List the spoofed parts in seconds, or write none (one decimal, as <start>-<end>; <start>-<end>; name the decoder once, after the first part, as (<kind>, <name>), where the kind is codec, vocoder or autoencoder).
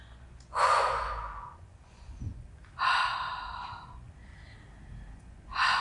0.0-2.6 (vocoder, Vocos); 3.8-4.3; 5.1-5.8